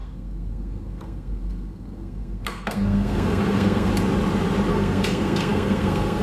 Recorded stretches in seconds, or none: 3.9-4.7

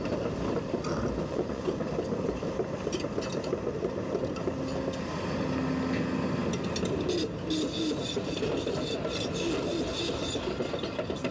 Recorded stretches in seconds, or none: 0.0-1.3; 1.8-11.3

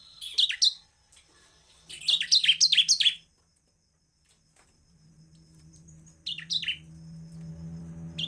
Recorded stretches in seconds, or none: 0.0-8.3